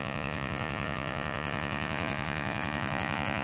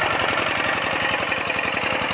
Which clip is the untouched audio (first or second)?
second